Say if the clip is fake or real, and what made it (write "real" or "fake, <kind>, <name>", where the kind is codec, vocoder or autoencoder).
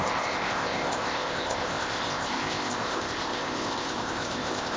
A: fake, codec, ZipCodec